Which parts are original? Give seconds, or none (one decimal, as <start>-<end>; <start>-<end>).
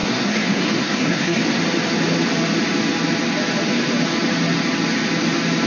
1.4-5.7